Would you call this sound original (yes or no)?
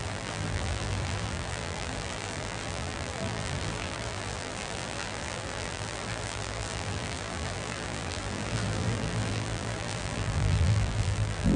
no